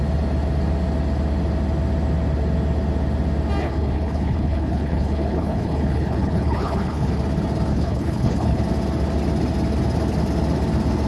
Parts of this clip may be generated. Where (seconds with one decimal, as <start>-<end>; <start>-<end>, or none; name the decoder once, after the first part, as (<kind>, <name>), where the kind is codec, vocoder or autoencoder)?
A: 3.6-7.1 (codec, HILCodec); 7.7-8.6